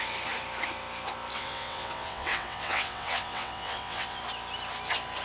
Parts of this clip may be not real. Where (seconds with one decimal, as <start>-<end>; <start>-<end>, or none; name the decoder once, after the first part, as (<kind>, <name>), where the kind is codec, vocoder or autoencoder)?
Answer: 1.3-4.2 (vocoder, WaveNeXt)